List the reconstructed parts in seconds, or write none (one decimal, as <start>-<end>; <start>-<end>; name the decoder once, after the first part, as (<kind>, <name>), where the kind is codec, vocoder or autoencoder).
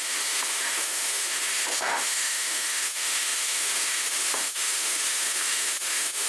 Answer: 0.0-6.3 (autoencoder, DAC-VAE)